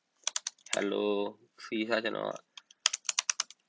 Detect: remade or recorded recorded